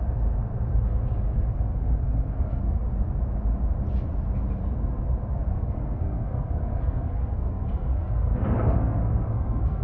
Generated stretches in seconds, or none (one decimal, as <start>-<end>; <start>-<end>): 1.5-2.8; 5.5-9.8